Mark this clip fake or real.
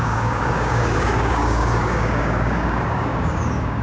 fake